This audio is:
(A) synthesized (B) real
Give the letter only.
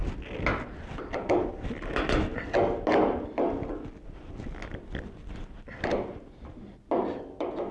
B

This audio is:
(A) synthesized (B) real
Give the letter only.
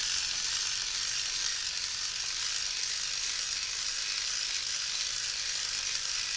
B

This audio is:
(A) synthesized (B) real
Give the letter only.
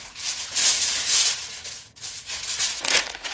A